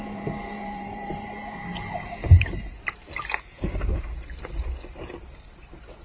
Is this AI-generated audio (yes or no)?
yes